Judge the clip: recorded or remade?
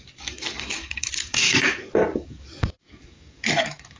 remade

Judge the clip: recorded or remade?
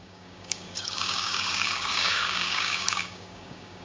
remade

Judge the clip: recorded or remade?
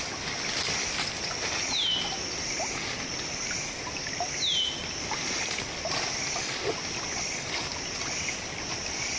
recorded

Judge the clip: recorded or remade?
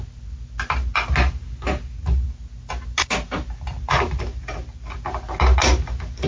recorded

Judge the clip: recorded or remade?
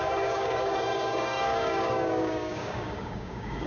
remade